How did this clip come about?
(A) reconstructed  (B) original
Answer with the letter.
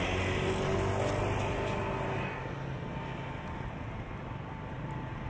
B